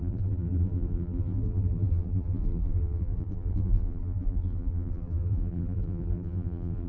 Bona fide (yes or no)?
no